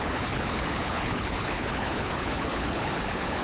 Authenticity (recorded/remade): remade